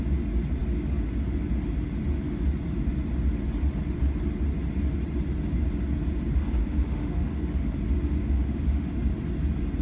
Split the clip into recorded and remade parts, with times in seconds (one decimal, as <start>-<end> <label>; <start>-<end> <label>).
0.0-6.6 recorded; 6.6-7.8 remade; 7.8-8.2 recorded; 8.2-8.9 remade; 8.9-9.8 recorded